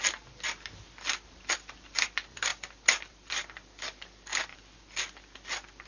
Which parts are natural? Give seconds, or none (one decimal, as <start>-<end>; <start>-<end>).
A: 0.0-2.5; 3.3-4.3; 5.2-5.9

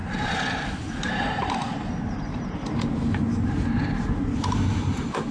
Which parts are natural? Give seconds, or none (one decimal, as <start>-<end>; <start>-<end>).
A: none

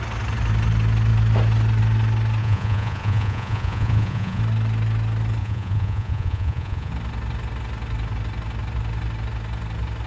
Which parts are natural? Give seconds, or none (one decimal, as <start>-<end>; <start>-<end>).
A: 0.0-2.4; 4.4-5.4; 6.9-10.1

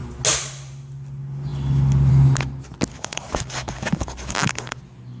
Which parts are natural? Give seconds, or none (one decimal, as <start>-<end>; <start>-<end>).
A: 0.0-2.9; 4.8-5.2

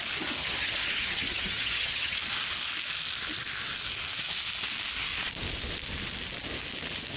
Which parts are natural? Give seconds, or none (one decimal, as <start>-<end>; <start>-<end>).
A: 0.0-0.4; 2.2-7.2

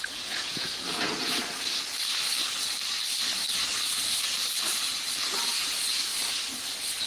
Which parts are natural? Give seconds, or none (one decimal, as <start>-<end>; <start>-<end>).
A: 1.4-5.6; 6.1-7.1

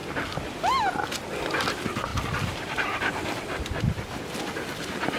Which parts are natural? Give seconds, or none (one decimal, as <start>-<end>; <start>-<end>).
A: 0.8-2.1; 4.1-5.2

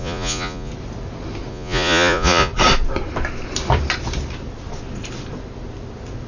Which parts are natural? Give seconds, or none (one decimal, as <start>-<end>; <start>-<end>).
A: 0.7-1.5; 2.5-6.3